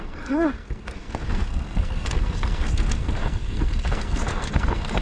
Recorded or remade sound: remade